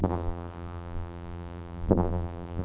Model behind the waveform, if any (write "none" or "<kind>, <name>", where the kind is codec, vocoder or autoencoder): vocoder, BigVGAN v2